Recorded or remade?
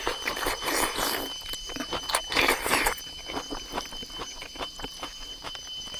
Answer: remade